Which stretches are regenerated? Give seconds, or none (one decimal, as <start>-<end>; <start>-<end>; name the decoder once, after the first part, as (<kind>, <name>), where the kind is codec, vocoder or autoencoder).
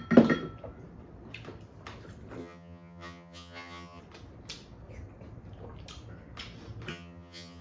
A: 2.4-4.0 (vocoder, HiFi-GAN); 6.9-7.6